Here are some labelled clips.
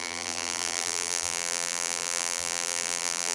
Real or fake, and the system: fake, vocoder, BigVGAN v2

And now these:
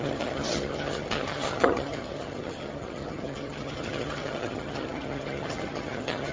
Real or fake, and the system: fake, vocoder, HiFi-GAN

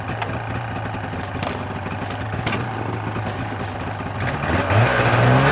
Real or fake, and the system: real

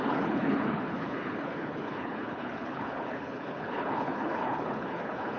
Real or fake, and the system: fake, codec, HILCodec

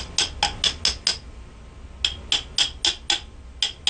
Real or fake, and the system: real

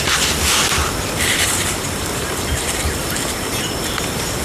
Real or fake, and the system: fake, vocoder, BigVGAN v2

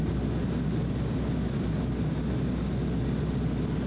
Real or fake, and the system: real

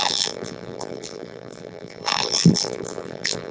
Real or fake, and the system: fake, vocoder, BigVGAN v2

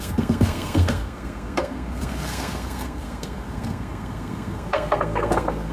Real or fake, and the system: fake, codec, SNAC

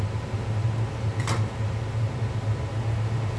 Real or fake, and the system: real